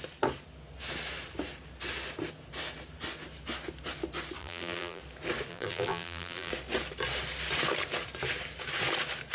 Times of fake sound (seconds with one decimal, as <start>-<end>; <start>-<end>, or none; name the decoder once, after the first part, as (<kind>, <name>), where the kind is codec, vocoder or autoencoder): 4.4-5.0 (vocoder, BigVGAN v2); 5.5-6.5